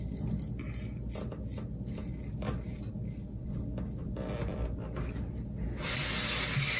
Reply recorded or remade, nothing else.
recorded